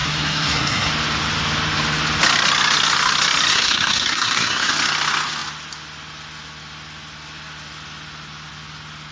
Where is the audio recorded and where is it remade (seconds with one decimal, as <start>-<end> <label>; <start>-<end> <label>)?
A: 0.0-0.9 remade; 0.9-3.5 recorded; 3.5-4.7 remade; 4.7-9.1 recorded